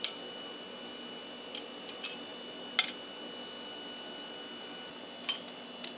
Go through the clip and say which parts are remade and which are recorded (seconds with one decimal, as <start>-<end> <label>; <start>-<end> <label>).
0.0-6.0 recorded